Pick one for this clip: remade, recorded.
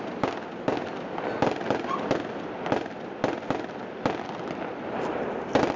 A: recorded